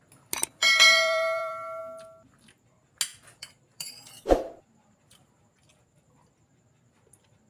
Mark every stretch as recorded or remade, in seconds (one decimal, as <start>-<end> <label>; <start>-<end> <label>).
0.0-0.6 recorded; 0.6-1.8 remade; 1.8-3.1 recorded; 3.1-4.5 remade; 4.5-7.5 recorded

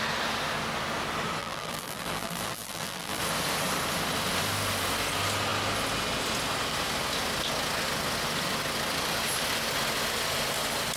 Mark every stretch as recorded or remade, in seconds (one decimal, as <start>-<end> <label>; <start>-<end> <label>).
0.0-1.4 recorded; 1.4-3.2 remade; 3.2-11.0 recorded

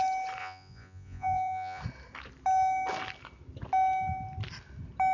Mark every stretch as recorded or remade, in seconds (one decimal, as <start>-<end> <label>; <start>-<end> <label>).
0.0-0.4 recorded; 0.4-1.8 remade; 1.8-5.1 recorded

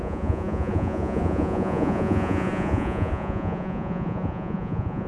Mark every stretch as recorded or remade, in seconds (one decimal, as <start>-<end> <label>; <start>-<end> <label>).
0.0-5.1 remade

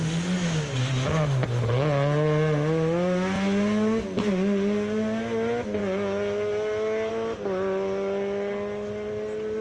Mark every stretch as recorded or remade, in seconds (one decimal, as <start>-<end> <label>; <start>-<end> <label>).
0.0-9.6 recorded

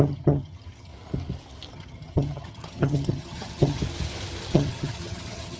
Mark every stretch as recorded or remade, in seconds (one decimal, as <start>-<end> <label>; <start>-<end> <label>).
0.0-0.9 remade; 0.9-1.7 recorded; 1.7-3.8 remade; 3.8-4.5 recorded; 4.5-5.6 remade